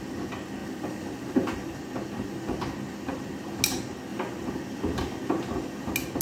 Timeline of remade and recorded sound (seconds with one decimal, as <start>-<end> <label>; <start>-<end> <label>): 0.0-0.6 recorded; 0.6-1.8 remade; 1.8-6.2 recorded